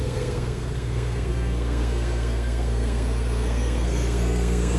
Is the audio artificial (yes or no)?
yes